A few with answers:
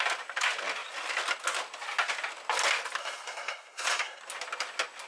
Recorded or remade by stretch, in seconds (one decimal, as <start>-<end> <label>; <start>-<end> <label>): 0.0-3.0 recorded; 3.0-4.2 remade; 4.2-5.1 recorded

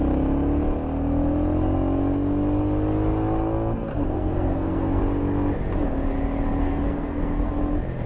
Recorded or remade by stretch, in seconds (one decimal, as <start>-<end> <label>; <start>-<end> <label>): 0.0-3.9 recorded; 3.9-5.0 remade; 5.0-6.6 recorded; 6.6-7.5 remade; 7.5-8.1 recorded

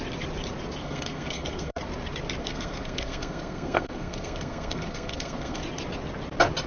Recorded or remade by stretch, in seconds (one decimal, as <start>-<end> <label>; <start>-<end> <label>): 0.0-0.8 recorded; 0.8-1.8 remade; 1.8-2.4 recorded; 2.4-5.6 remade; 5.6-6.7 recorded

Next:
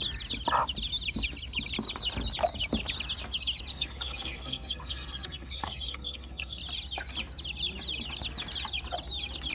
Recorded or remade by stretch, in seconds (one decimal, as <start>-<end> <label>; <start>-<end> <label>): 0.0-3.7 recorded; 3.7-6.6 remade; 6.6-9.5 recorded